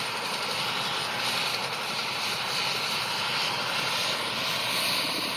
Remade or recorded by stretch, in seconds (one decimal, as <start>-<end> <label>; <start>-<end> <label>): 0.0-5.4 recorded